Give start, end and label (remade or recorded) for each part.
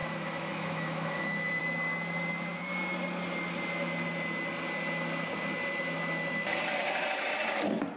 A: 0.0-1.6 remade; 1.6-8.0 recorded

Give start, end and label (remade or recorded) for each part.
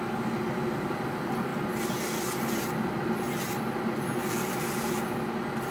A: 0.0-5.7 recorded